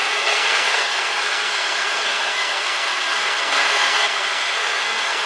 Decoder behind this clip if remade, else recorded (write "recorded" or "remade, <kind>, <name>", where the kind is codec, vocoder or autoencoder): remade, codec, SNAC